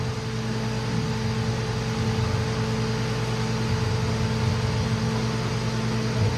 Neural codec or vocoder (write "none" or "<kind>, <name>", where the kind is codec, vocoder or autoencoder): none